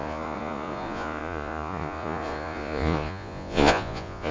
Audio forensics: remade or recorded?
remade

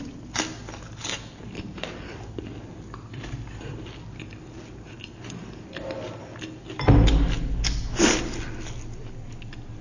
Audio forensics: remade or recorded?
recorded